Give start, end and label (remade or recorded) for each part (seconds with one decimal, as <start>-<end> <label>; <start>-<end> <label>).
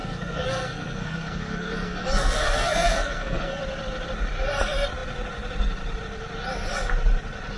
0.0-3.6 remade; 3.6-7.6 recorded